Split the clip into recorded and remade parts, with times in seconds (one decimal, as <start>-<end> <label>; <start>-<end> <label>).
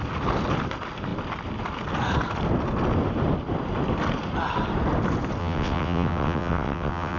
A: 0.0-5.4 recorded; 5.4-7.2 remade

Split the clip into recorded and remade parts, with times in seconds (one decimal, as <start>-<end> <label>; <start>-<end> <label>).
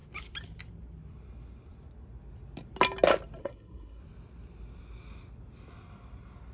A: 0.0-3.4 recorded; 3.4-4.0 remade; 4.0-6.5 recorded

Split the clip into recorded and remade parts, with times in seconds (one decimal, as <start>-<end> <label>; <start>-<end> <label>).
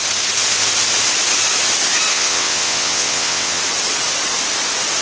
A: 0.0-2.1 recorded; 2.1-3.6 remade; 3.6-5.0 recorded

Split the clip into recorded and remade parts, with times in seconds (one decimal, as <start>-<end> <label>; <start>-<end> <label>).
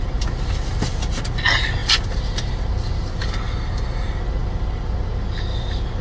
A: 0.0-6.0 recorded